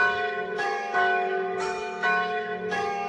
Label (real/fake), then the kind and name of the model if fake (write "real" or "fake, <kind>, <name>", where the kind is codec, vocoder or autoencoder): fake, autoencoder, DAC-VAE